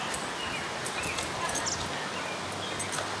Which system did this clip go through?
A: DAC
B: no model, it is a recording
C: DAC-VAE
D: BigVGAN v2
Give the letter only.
B